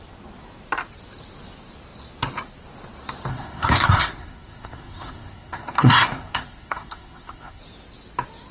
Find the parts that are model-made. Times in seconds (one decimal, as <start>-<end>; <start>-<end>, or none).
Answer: 3.3-7.6